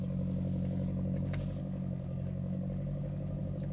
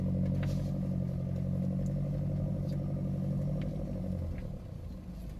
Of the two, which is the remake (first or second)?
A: first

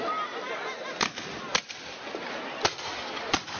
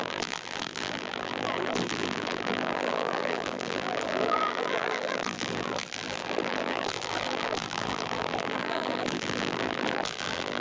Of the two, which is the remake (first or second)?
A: second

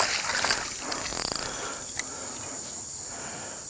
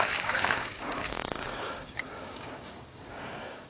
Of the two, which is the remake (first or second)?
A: second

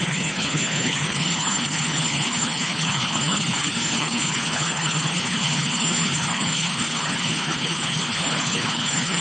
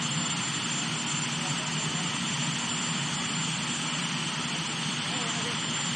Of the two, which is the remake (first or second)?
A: first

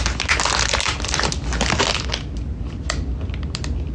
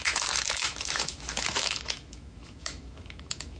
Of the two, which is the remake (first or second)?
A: second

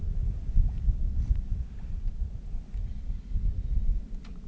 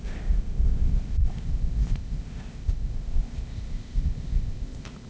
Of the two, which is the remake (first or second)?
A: second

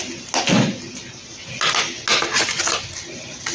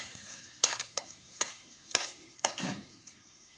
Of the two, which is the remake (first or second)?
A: second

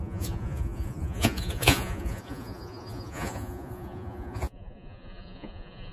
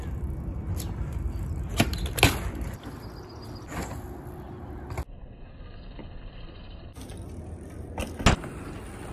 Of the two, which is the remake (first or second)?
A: first